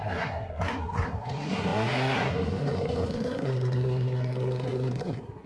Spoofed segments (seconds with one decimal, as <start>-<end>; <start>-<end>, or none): 0.0-5.5